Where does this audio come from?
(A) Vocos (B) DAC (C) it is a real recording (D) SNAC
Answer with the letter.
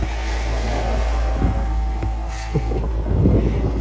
D